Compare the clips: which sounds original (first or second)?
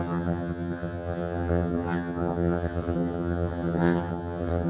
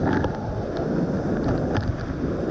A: second